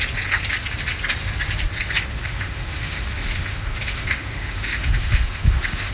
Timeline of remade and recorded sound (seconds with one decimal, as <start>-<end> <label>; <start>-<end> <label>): 0.0-2.1 recorded; 2.1-5.9 remade